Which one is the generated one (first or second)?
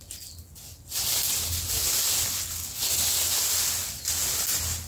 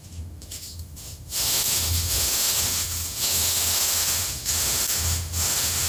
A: second